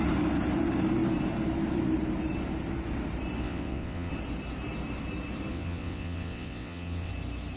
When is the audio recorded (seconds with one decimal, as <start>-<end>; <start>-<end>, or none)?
0.0-3.4; 4.1-5.5; 7.1-7.6